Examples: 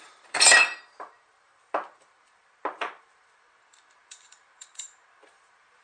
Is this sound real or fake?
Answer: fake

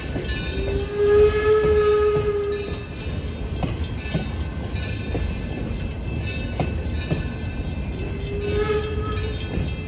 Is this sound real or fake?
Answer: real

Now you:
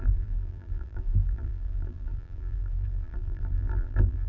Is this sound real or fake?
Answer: fake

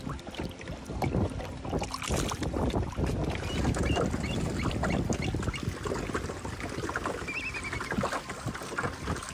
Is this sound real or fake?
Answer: real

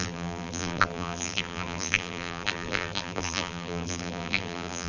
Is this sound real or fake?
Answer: fake